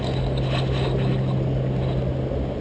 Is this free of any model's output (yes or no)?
yes